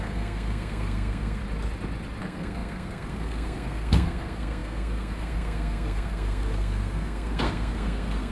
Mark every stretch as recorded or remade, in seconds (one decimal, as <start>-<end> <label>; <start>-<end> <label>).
0.0-1.4 remade; 1.4-2.2 recorded; 2.2-8.3 remade